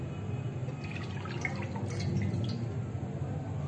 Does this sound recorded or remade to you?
recorded